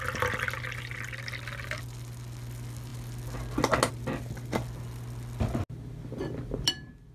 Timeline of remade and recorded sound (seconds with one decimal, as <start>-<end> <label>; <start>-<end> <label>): 0.0-7.1 recorded